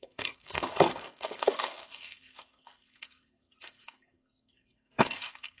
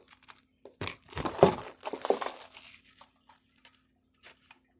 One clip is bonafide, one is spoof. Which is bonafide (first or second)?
second